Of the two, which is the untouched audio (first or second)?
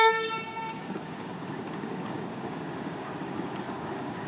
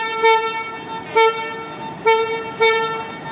second